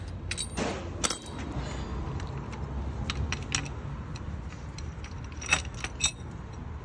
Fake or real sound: real